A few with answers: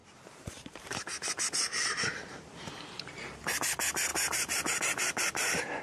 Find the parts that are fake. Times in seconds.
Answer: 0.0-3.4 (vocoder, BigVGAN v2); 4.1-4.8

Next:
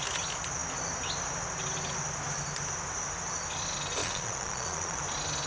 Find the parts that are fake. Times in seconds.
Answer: 4.0-5.0 (vocoder, Vocos)

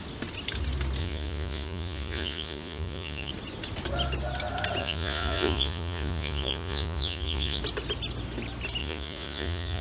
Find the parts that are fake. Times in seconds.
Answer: 1.0-3.3 (vocoder, Vocos); 4.8-7.6; 8.8-9.8

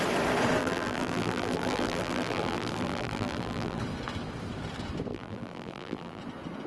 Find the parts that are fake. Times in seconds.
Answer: 0.6-3.8 (vocoder, BigVGAN v2); 5.1-6.2